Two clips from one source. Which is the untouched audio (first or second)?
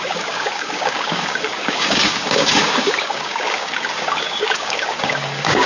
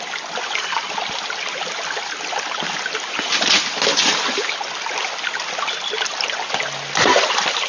second